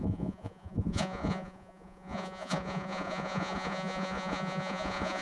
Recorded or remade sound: remade